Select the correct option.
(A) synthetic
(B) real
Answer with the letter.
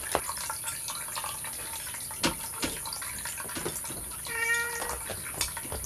B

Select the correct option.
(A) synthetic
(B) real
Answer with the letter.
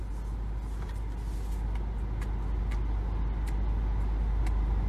B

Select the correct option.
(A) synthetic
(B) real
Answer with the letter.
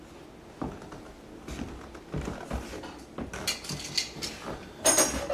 B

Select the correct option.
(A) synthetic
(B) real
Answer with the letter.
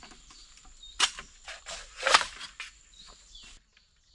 A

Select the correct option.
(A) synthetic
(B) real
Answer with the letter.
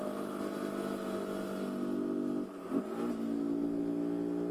B